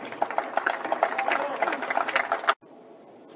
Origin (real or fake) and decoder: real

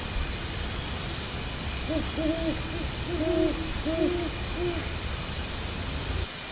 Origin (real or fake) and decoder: real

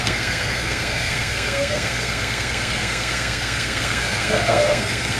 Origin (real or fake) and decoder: fake, codec, SNAC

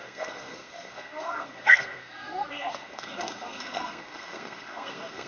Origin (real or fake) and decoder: fake, codec, SNAC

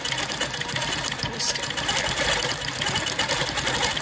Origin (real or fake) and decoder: real